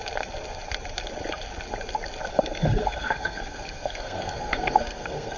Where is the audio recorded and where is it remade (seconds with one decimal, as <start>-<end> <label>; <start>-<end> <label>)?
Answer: 0.0-2.3 recorded; 2.3-5.4 remade